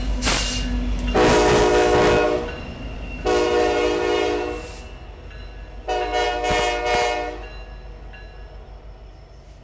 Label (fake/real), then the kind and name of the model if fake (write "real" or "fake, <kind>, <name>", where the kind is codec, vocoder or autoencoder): real